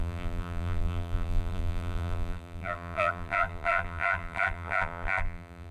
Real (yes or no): no